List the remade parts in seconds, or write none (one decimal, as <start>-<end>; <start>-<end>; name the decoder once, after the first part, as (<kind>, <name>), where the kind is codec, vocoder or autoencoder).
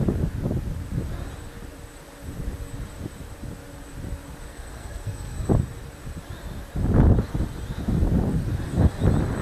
4.5-5.5 (codec, SNAC)